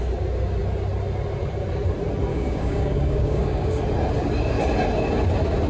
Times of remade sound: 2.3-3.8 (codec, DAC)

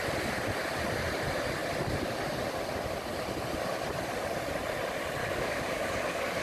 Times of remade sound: 5.2-6.4 (codec, DAC)

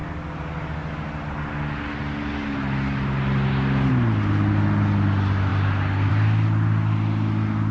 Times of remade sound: none

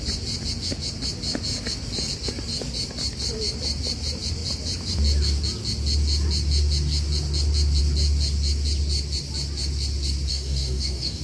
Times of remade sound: 10.3-11.2 (codec, DAC)

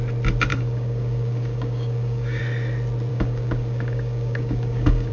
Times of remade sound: 0.5-2.4 (codec, DAC); 3.1-5.1

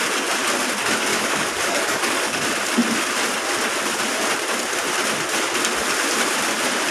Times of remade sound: 1.1-2.4 (codec, DAC)

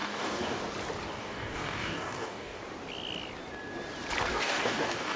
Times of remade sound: 0.0-0.6 (codec, DAC); 1.2-2.6; 4.3-5.2

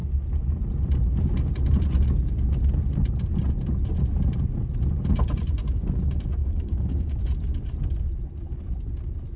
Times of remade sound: 6.4-7.2 (codec, DAC)